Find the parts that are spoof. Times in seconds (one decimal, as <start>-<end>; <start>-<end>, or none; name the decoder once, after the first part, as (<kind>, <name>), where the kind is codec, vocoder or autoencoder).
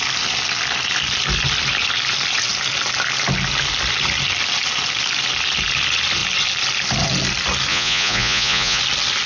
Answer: 7.7-8.8 (vocoder, Vocos)